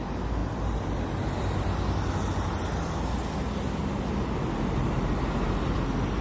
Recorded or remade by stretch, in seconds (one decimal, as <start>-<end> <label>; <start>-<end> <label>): 0.0-6.2 recorded